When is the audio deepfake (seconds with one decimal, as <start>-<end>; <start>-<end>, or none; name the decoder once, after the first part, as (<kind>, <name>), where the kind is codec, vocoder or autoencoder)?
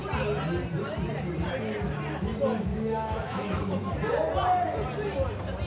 2.7-3.9 (autoencoder, DAC-VAE)